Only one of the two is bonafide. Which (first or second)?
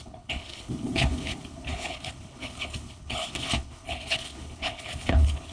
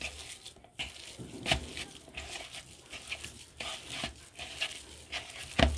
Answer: second